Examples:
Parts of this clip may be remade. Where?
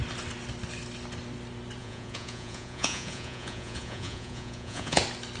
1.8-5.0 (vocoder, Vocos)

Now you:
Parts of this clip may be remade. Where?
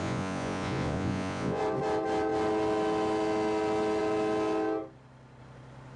0.0-1.6 (vocoder, Vocos)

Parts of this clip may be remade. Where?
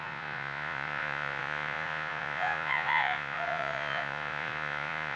0.0-5.2 (vocoder, Vocos)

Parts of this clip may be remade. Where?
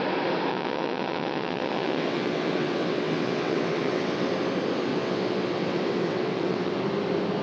0.5-4.3 (vocoder, WaveNeXt); 4.9-6.8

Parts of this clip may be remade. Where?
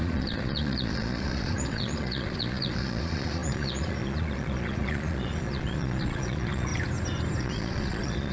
0.0-6.7 (vocoder, Vocos); 7.4-8.3